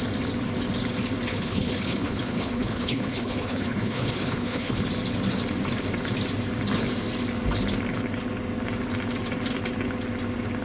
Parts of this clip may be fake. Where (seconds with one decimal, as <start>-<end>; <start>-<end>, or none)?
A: 1.3-4.8